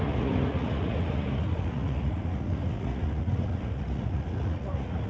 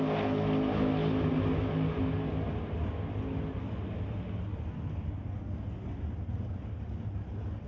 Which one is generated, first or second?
first